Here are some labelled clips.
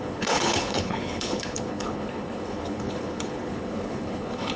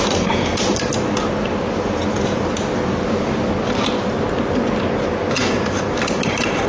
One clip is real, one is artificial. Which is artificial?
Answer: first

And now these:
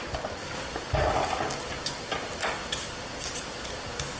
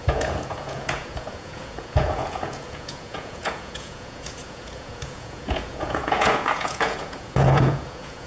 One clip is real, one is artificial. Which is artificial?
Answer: second